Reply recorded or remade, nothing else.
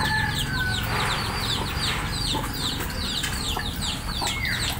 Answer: recorded